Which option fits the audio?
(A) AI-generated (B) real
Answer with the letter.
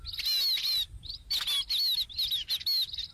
B